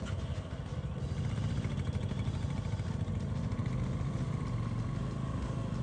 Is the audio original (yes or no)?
yes